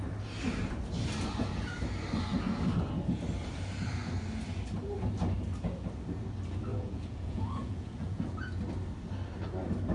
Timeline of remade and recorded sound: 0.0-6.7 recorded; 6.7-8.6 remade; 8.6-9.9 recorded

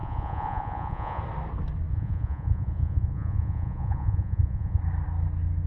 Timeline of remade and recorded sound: 0.0-1.2 remade; 1.2-1.9 recorded; 1.9-4.8 remade; 4.8-5.7 recorded

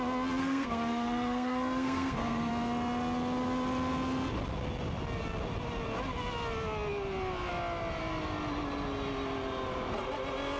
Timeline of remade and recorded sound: 0.0-0.4 recorded; 0.4-2.5 remade; 2.5-10.6 recorded